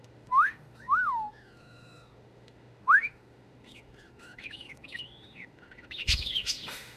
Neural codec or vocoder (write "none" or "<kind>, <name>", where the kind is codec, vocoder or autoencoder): autoencoder, DAC-VAE